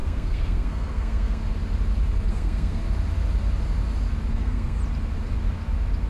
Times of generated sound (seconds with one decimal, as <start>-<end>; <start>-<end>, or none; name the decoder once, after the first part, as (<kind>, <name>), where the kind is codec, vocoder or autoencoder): 0.0-1.4 (codec, SNAC); 2.3-2.8; 4.3-4.8